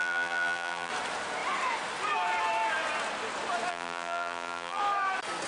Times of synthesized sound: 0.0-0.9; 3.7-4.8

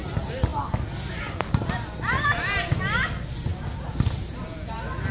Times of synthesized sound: none

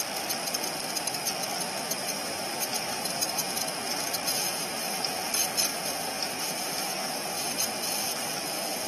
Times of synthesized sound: 2.0-3.5; 5.7-7.5

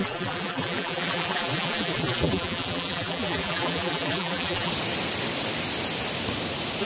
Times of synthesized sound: 0.0-4.7

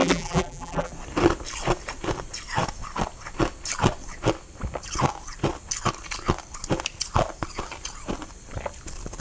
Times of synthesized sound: 0.0-0.9